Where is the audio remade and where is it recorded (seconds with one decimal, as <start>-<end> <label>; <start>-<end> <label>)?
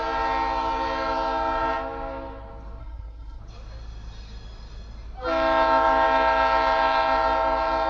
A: 0.0-2.8 recorded; 2.8-3.4 remade; 3.4-7.9 recorded